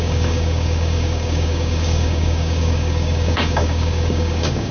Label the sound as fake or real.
fake